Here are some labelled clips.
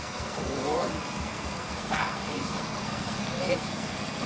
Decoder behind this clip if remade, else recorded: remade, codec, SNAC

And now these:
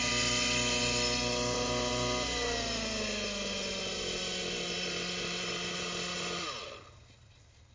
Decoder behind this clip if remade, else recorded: recorded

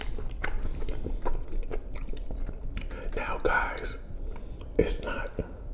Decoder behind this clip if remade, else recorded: recorded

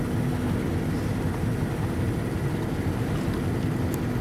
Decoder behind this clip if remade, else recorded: recorded